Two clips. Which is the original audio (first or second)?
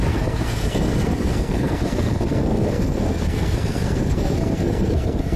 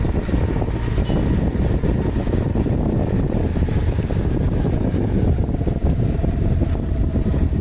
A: second